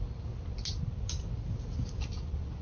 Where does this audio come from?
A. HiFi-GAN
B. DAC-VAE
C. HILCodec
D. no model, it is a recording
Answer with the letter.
D